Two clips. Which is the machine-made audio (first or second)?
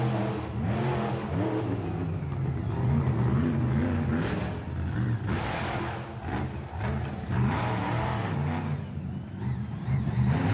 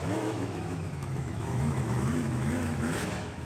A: second